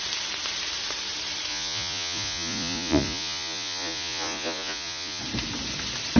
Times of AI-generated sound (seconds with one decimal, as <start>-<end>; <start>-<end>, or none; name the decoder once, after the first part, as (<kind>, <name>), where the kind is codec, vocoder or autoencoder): 1.5-5.2 (vocoder, Vocos)